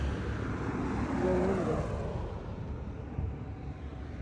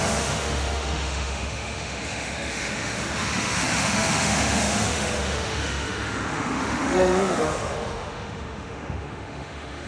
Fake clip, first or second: second